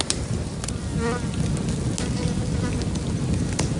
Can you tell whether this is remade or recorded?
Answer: recorded